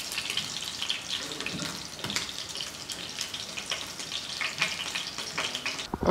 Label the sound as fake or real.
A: real